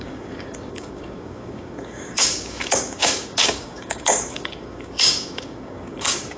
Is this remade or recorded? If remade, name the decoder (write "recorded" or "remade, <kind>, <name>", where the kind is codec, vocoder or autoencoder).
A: remade, codec, DAC